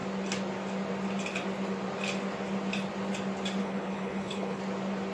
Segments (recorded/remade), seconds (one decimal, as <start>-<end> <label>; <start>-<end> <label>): 0.0-3.6 recorded; 3.6-4.6 remade; 4.6-5.1 recorded

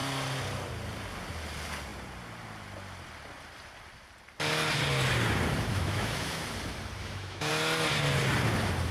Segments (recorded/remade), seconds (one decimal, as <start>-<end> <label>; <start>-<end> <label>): 0.0-5.7 recorded; 5.7-6.4 remade; 6.4-7.0 recorded; 7.0-7.5 remade; 7.5-8.9 recorded

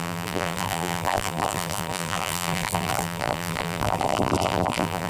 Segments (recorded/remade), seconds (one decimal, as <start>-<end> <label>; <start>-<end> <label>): 0.0-5.1 remade

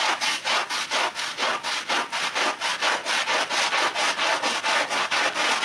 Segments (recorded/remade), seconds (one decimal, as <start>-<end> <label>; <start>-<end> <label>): 0.0-5.6 recorded

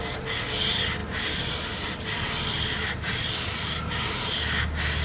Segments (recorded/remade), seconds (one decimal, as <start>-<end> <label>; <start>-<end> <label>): 0.0-5.0 recorded

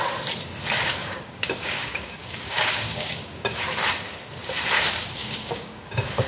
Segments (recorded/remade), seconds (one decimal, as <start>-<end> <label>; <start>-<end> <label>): 0.0-1.0 recorded; 1.0-3.6 remade; 3.6-5.2 recorded; 5.2-6.3 remade